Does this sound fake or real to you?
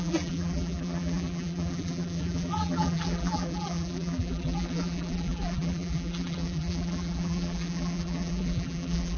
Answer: fake